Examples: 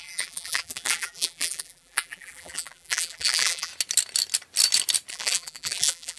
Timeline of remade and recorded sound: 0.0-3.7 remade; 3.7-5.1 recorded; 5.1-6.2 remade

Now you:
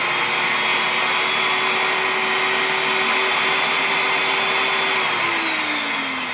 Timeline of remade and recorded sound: 0.0-6.3 recorded

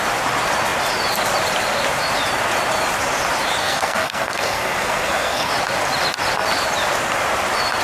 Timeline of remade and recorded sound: 0.0-3.6 recorded; 3.6-5.5 remade; 5.5-7.8 recorded

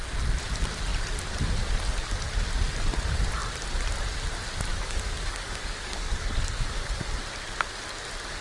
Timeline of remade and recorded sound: 0.0-4.7 recorded; 4.7-6.9 remade; 6.9-8.4 recorded

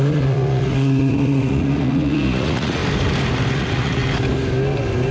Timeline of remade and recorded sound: 0.0-2.8 remade; 2.8-3.5 recorded; 3.5-4.0 remade; 4.0-5.1 recorded

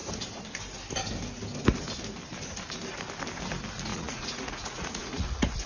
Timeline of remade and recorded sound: 0.0-3.9 recorded; 3.9-5.7 remade

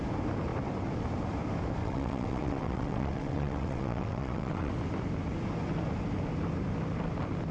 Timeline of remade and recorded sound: 0.0-1.8 recorded; 1.8-4.7 remade; 4.7-7.5 recorded